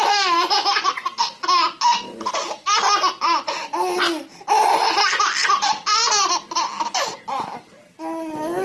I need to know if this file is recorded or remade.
recorded